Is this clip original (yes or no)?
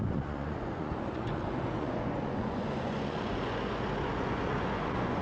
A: no